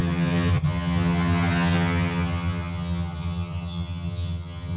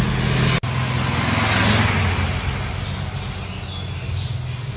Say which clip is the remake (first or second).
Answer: first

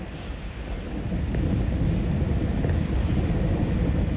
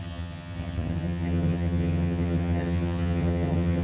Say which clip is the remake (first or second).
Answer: second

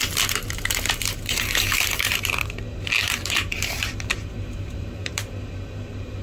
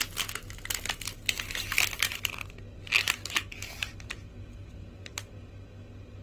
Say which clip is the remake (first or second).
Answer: first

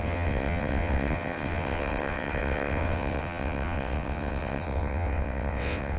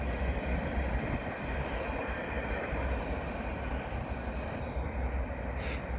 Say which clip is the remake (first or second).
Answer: first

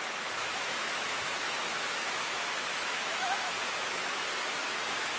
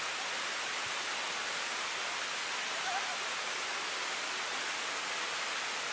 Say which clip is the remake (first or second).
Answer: first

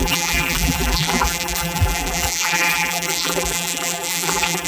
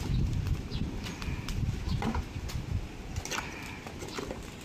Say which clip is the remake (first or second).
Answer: first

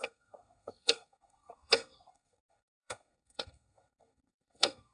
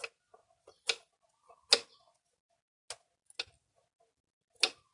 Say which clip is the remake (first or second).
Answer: first